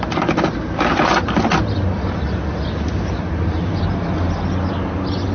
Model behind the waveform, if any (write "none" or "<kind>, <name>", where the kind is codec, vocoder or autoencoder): none